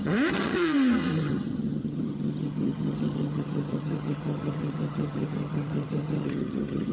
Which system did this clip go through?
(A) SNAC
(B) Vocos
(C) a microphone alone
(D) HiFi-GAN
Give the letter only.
D